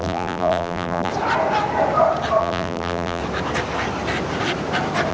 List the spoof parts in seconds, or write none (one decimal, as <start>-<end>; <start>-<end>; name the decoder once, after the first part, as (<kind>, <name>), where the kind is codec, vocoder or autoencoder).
0.0-1.1 (vocoder, BigVGAN v2); 2.4-3.2